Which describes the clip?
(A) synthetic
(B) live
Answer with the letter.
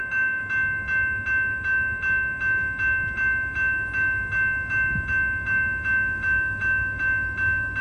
B